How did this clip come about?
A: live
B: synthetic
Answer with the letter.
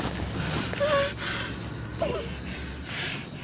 A